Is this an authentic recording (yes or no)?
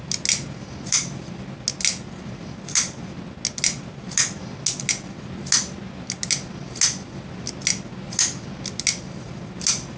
yes